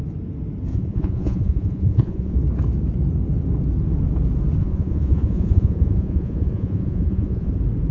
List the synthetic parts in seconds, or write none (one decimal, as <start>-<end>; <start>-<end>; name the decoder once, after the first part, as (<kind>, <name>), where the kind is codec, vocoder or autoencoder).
0.7-2.4 (vocoder, Vocos); 4.6-7.5